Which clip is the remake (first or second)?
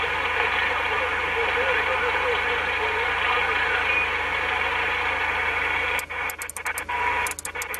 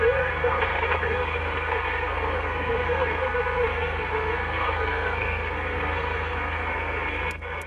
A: second